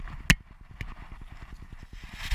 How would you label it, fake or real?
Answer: real